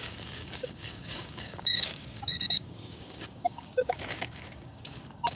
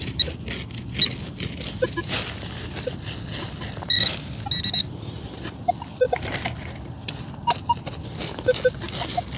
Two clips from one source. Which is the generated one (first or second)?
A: first